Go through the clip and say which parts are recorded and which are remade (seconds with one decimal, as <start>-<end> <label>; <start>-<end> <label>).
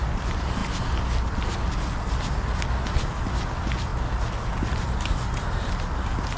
0.0-6.4 recorded